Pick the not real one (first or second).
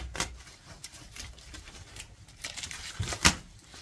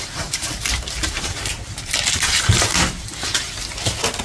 first